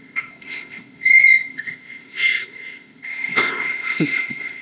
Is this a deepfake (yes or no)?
yes